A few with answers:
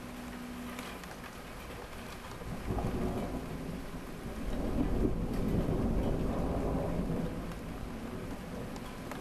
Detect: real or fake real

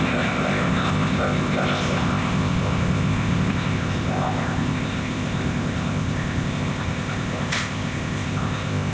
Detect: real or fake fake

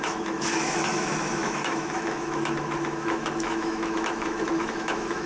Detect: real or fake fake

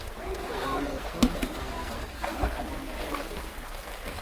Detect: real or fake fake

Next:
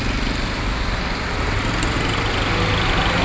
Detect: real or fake real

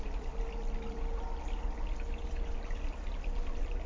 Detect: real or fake real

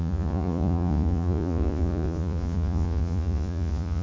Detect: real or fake fake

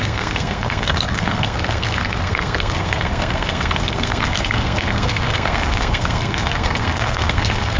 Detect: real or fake fake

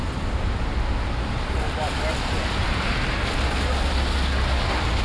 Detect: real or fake real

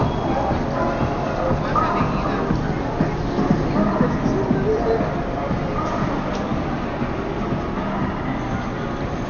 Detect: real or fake real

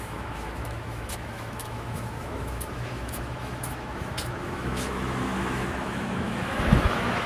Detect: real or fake fake